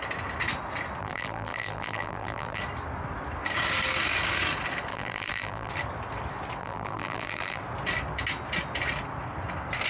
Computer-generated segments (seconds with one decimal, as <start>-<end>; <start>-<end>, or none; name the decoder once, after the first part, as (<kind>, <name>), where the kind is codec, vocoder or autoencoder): 1.0-2.6 (vocoder, BigVGAN v2); 4.9-5.7; 6.6-7.6